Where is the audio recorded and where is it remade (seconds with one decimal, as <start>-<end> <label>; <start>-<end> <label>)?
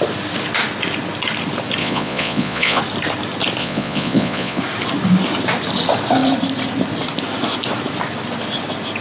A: 0.0-1.8 recorded; 1.8-2.8 remade; 2.8-3.6 recorded; 3.6-4.6 remade; 4.6-9.0 recorded